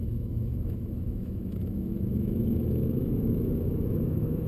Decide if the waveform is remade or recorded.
remade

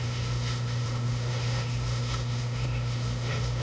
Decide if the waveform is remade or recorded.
remade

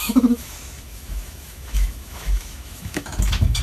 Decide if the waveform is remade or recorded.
remade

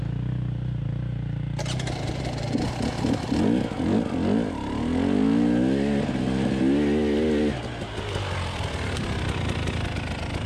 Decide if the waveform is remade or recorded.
recorded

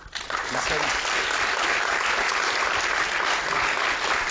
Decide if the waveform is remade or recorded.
recorded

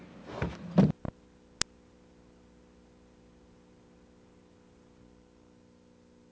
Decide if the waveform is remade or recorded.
recorded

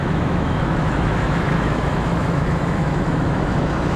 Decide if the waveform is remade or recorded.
remade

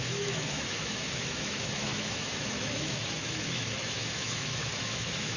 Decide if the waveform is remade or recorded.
remade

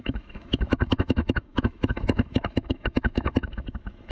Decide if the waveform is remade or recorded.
remade